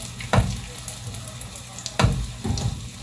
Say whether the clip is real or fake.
real